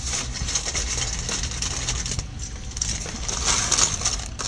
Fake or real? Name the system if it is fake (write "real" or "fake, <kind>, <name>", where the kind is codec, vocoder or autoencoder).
real